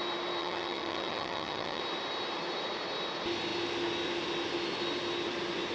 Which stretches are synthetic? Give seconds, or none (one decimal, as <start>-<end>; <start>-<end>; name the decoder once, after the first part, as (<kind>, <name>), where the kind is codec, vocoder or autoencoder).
0.4-1.8 (vocoder, HiFi-GAN)